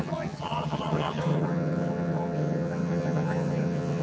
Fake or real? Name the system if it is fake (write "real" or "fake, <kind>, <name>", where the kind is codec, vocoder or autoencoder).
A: fake, vocoder, HiFi-GAN